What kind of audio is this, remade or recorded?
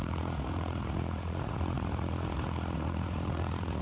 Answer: remade